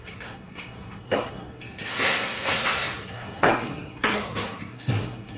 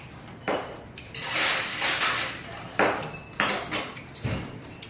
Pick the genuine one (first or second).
second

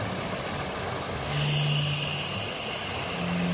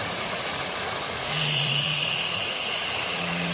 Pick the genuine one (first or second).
first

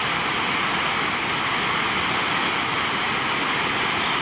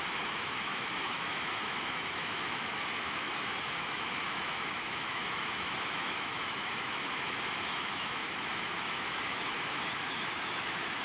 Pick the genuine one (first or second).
first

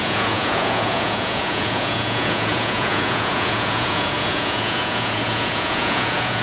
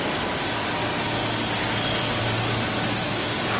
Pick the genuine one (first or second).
second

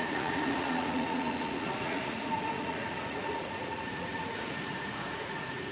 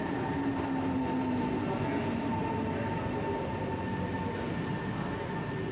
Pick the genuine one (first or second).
second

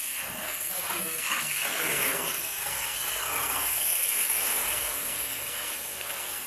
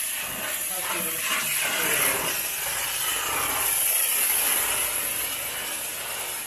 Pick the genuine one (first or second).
second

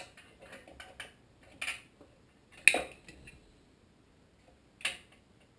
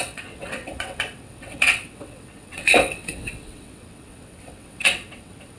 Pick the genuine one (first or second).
first